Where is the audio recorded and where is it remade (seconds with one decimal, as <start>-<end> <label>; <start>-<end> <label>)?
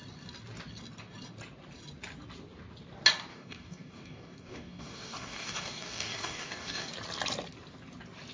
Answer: 0.0-3.3 recorded; 3.3-6.9 remade; 6.9-8.3 recorded